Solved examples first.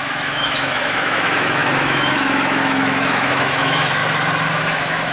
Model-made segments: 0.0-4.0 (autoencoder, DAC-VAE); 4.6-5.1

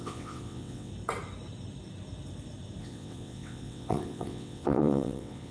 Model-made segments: 0.0-0.9 (vocoder, WaveNeXt); 2.8-5.5

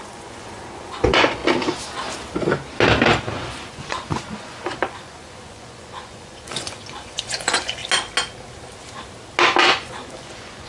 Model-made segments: 0.0-1.4 (vocoder, Vocos); 3.3-7.8; 9.6-10.7